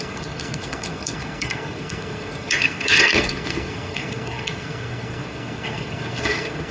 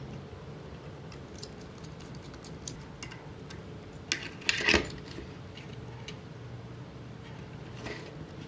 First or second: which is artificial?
first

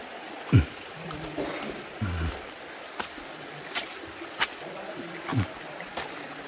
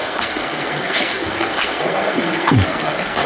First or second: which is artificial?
second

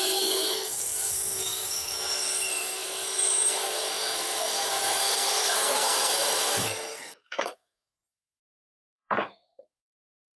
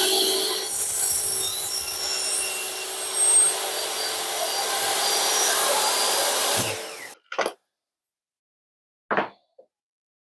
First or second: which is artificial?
first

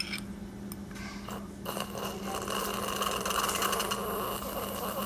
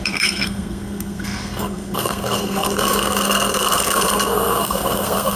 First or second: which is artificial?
second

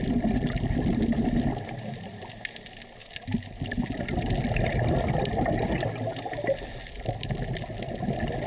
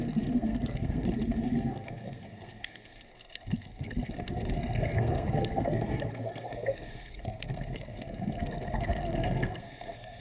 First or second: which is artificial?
second